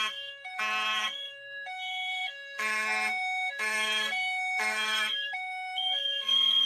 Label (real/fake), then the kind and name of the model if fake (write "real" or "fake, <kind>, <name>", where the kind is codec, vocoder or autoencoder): fake, codec, SNAC